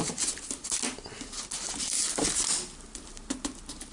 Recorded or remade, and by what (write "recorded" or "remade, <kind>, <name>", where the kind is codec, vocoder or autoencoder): recorded